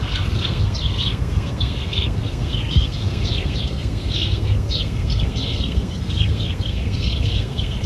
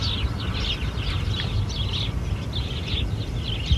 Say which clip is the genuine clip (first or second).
second